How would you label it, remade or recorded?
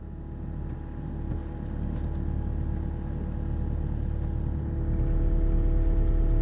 recorded